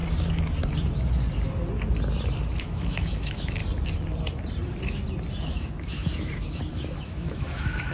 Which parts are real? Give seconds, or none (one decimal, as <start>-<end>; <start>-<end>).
0.0-2.6; 3.6-5.4